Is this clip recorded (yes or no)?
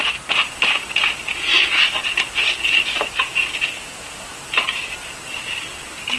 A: yes